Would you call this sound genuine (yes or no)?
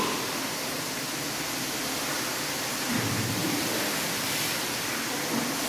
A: no